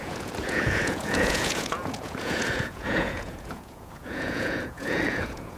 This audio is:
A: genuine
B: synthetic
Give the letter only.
B